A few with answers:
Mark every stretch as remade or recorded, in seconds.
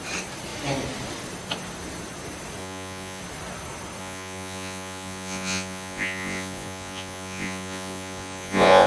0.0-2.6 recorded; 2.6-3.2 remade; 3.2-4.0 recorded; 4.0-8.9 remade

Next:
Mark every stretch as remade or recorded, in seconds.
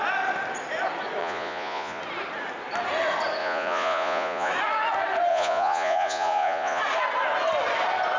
0.0-1.2 recorded; 1.2-2.0 remade; 2.0-3.4 recorded; 3.4-4.5 remade; 4.5-5.3 recorded; 5.3-6.8 remade; 6.8-8.2 recorded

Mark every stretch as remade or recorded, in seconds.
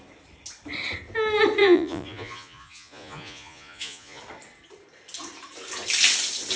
0.0-1.6 recorded; 1.6-4.2 remade; 4.2-6.6 recorded